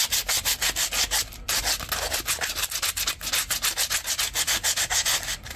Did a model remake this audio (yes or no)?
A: no